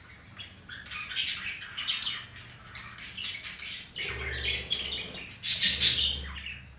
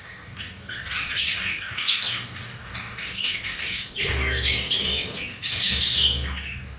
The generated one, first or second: second